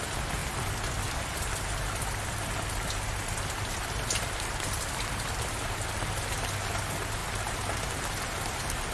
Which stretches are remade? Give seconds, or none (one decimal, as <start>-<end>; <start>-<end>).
none